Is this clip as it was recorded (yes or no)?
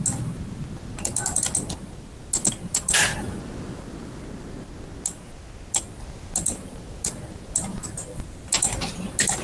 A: yes